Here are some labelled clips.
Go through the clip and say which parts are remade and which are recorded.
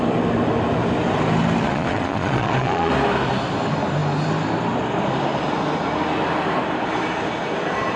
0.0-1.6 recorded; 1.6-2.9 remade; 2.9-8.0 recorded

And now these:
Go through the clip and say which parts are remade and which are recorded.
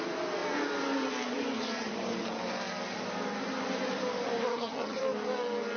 0.0-4.5 recorded; 4.5-5.0 remade; 5.0-5.8 recorded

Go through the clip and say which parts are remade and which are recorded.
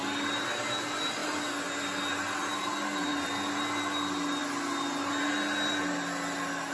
0.0-6.7 recorded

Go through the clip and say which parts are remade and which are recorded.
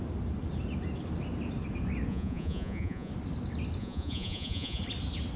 0.0-2.1 recorded; 2.1-3.1 remade; 3.1-3.8 recorded; 3.8-4.8 remade; 4.8-5.4 recorded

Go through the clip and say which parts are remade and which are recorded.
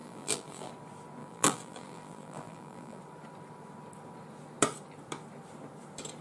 0.0-0.7 remade; 0.7-1.2 recorded; 1.2-3.0 remade; 3.0-6.2 recorded